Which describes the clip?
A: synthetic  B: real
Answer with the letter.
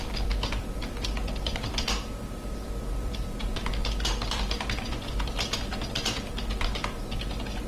A